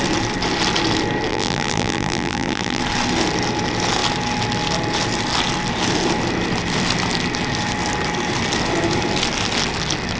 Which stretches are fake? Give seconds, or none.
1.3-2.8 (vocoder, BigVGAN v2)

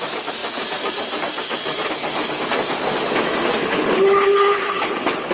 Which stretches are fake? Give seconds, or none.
3.6-5.3 (codec, HILCodec)

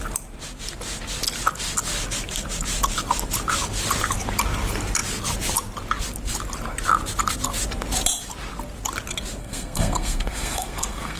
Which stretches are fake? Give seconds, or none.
9.4-11.2 (codec, SNAC)

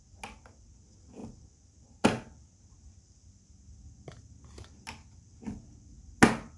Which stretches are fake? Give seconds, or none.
none

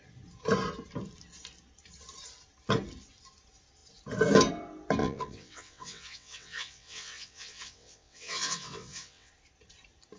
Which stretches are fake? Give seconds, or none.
5.0-9.3 (vocoder, WaveNeXt)